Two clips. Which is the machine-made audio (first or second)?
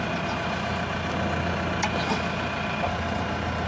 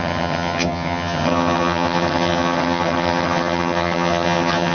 second